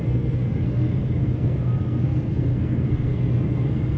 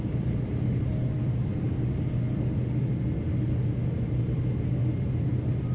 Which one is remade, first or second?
first